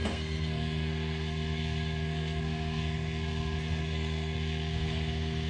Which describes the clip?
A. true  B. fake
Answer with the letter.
B